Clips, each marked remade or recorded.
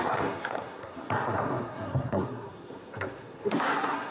remade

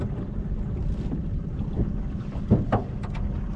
recorded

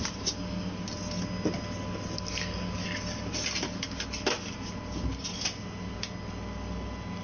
recorded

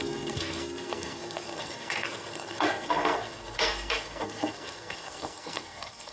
remade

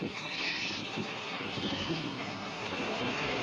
remade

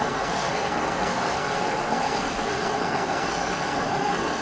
remade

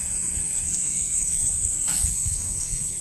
remade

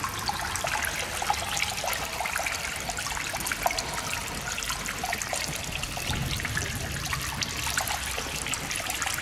recorded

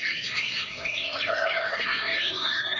remade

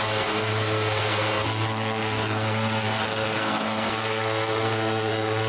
remade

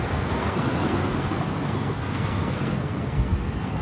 remade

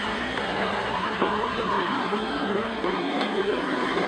remade